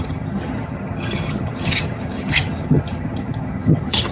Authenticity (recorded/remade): remade